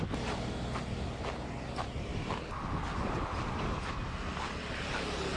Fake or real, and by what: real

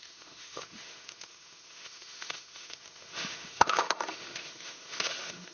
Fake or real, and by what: fake, autoencoder, DAC-VAE